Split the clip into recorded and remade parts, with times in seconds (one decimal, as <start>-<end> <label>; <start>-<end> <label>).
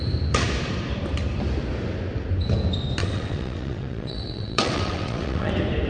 0.0-3.0 recorded; 3.0-5.5 remade; 5.5-5.9 recorded